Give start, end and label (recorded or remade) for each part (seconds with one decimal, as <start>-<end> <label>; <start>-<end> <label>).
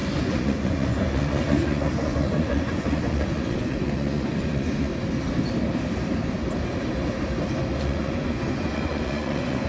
0.0-4.9 remade; 4.9-7.8 recorded; 7.8-9.7 remade